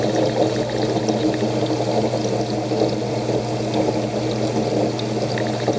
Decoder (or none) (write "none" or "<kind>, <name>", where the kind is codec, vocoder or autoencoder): none